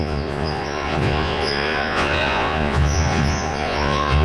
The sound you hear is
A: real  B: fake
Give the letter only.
B